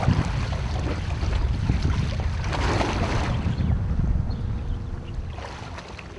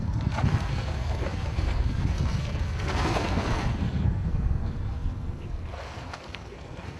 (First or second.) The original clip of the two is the first